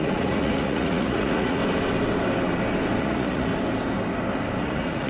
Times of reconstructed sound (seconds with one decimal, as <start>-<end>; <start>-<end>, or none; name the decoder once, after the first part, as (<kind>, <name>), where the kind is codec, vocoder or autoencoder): 0.0-1.6 (vocoder, Vocos); 3.0-3.5; 4.6-5.1